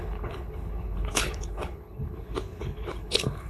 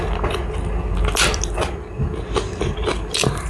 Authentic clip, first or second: second